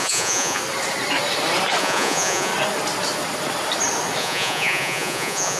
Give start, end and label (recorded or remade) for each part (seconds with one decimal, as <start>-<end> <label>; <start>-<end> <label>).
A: 0.0-0.6 remade; 0.6-1.8 recorded; 1.8-2.5 remade; 2.5-4.2 recorded; 4.2-5.6 remade